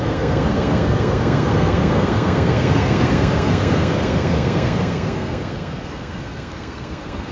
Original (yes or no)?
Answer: no